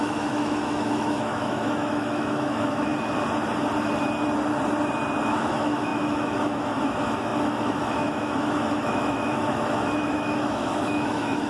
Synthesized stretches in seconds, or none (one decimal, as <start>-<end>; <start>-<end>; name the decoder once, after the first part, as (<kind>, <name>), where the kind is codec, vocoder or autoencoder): 0.0-2.9 (autoencoder, DAC-VAE); 5.2-11.5